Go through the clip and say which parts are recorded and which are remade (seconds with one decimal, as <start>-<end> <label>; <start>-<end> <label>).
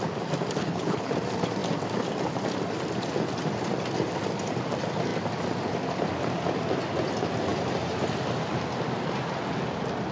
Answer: 0.0-0.6 recorded; 0.6-1.1 remade; 1.1-10.1 recorded